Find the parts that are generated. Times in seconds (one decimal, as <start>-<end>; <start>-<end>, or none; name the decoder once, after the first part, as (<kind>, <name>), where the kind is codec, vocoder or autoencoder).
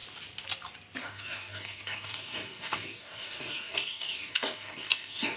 1.0-5.4 (codec, DAC)